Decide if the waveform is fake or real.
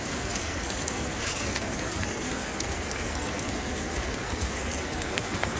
fake